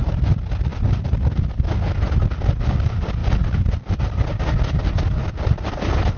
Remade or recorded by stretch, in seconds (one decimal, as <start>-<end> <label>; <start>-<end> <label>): 0.0-6.2 recorded